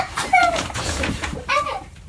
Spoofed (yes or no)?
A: yes